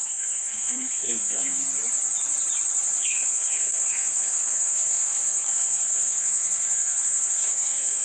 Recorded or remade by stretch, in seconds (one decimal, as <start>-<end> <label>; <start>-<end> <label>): 0.0-1.6 remade; 1.6-3.0 recorded; 3.0-8.0 remade